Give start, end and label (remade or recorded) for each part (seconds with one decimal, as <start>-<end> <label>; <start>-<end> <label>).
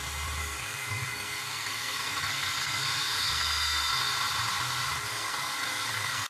0.0-0.4 recorded; 0.4-3.9 remade; 3.9-5.1 recorded; 5.1-6.3 remade